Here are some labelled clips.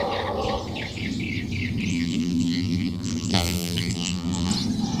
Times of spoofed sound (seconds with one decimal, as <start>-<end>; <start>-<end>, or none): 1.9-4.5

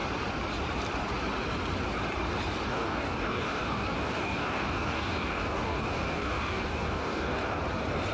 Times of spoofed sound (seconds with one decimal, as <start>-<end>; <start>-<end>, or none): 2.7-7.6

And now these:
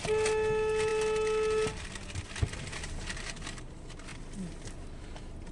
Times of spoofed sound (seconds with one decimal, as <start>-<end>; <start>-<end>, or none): none

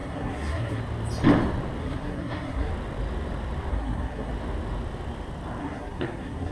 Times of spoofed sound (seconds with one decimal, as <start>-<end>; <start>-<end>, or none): 0.0-0.8; 1.8-2.7; 3.7-4.3; 5.6-6.5

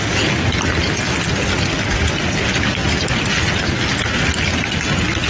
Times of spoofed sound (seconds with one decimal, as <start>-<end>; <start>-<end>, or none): 2.8-3.6